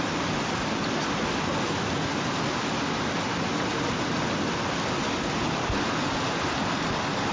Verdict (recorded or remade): recorded